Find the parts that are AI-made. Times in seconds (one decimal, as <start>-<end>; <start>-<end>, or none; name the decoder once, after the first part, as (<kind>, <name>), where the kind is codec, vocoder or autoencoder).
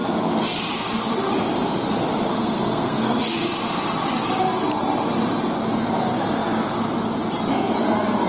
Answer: 2.3-3.2 (codec, SNAC)